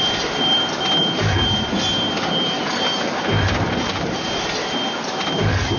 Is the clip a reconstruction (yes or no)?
no